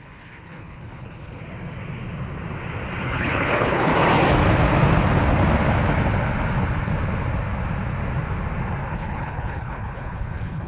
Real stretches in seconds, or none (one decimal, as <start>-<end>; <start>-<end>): 1.4-3.0; 3.9-8.9